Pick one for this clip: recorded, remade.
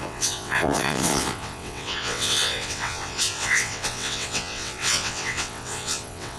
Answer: remade